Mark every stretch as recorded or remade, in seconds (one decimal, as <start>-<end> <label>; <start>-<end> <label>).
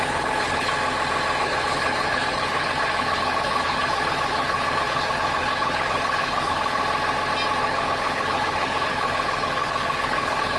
0.0-0.7 remade; 0.7-1.4 recorded; 1.4-6.8 remade; 6.8-7.6 recorded; 7.6-10.6 remade